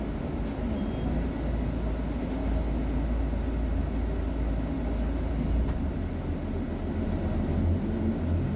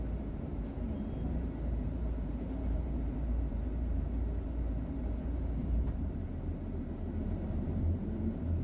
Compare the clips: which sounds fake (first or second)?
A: second